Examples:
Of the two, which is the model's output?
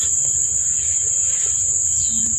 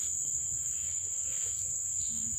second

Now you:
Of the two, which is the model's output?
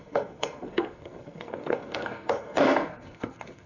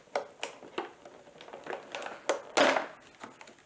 first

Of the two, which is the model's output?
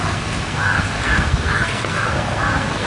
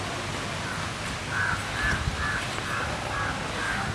first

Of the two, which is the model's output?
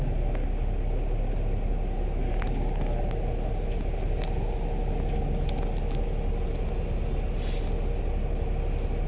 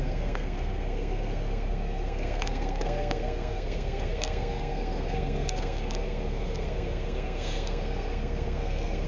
second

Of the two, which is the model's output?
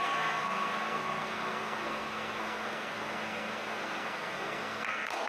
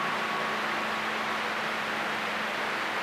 first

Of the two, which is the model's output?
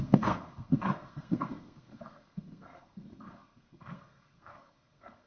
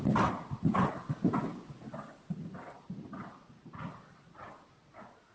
first